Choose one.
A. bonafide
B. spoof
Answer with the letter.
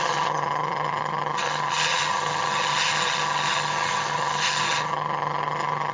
B